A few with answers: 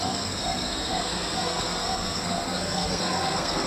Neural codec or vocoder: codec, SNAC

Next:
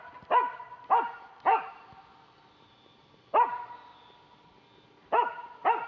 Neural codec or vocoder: none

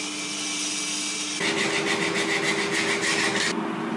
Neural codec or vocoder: none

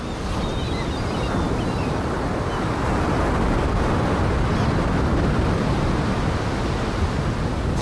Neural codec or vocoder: none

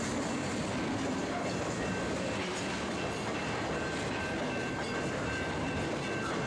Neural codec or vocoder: vocoder, BigVGAN v2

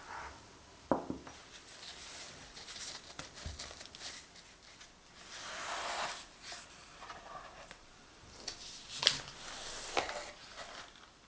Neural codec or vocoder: none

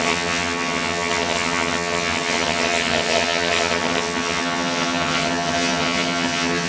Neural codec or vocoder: vocoder, HiFi-GAN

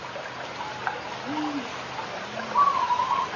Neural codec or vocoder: none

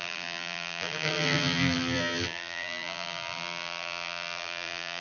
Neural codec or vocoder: vocoder, BigVGAN v2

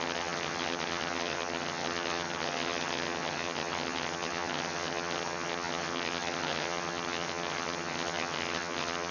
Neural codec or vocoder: vocoder, HiFi-GAN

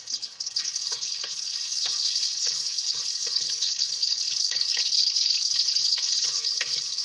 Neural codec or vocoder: codec, HILCodec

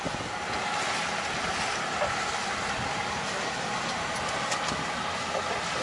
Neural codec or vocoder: none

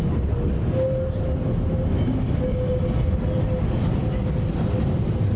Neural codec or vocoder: none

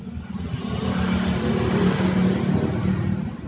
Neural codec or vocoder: none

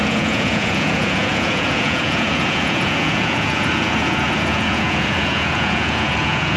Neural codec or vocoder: vocoder, Vocos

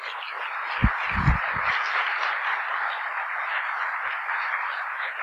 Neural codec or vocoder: none